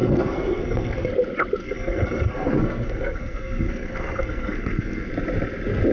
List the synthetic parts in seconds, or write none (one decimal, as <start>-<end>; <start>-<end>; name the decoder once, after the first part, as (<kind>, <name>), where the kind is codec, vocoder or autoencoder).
0.0-1.1 (codec, SNAC); 1.6-5.1